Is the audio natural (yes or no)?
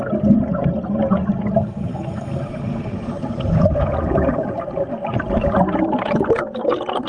yes